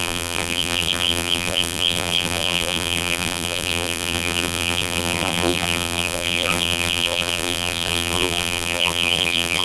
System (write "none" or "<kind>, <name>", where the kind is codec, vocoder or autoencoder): vocoder, BigVGAN v2